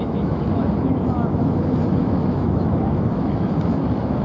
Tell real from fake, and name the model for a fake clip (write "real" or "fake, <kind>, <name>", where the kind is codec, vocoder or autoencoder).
fake, autoencoder, DAC-VAE